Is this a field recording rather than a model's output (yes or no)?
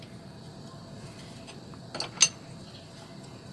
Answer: yes